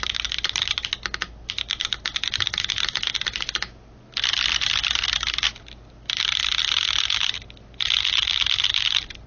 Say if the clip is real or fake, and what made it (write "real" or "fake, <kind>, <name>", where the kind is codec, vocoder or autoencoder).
real